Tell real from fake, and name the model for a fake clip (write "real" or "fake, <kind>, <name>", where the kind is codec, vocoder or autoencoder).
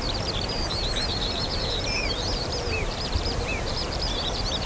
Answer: fake, vocoder, BigVGAN v2